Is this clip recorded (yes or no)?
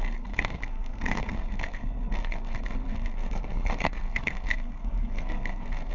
no